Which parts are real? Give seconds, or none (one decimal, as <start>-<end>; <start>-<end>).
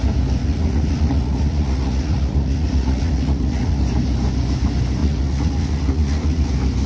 0.0-0.4; 3.8-5.0; 6.5-6.9